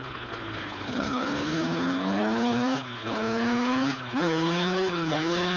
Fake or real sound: fake